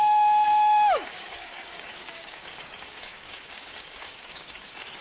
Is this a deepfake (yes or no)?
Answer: yes